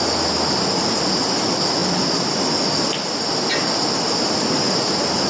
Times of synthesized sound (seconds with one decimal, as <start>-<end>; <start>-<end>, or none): none